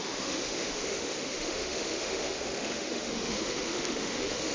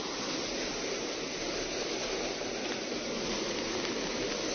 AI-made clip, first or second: first